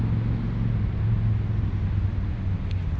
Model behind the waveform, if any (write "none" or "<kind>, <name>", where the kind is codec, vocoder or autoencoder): none